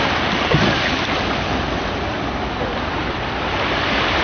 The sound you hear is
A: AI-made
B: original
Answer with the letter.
A